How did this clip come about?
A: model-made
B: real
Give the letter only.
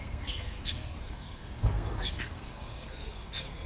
A